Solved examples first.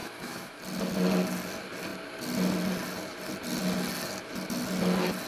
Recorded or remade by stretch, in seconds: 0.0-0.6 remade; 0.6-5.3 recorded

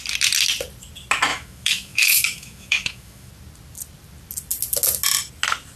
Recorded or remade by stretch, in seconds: 0.0-1.3 recorded; 1.3-3.3 remade; 3.3-5.8 recorded

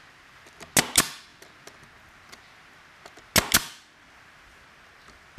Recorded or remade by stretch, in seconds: 0.0-5.4 recorded